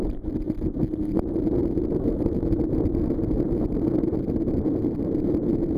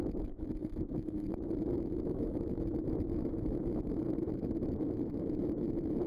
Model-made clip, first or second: second